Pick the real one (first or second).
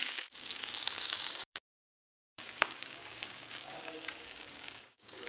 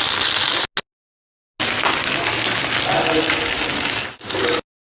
second